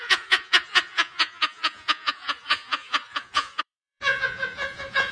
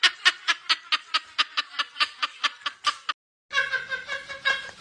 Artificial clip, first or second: first